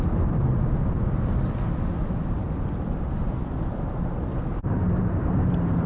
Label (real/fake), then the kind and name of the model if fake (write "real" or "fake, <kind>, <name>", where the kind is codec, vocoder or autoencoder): real